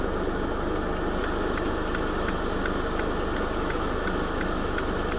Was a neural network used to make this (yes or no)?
no